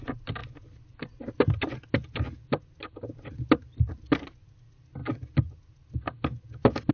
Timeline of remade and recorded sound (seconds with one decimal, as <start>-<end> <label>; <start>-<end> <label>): 0.0-6.9 recorded